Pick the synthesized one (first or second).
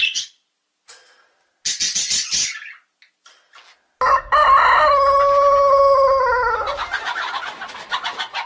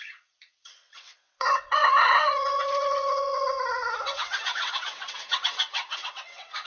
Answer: second